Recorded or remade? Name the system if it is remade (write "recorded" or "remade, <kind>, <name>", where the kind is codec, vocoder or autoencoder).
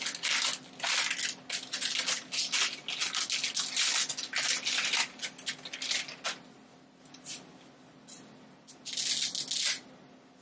recorded